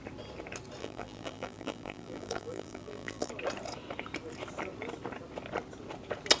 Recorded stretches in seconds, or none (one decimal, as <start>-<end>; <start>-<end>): 0.0-0.8; 3.3-6.4